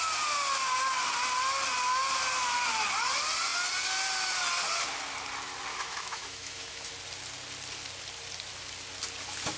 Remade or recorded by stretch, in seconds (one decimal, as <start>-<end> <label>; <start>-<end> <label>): 0.0-5.7 recorded; 5.7-6.9 remade; 6.9-9.6 recorded